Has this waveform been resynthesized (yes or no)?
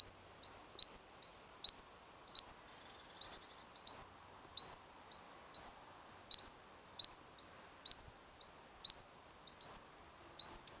no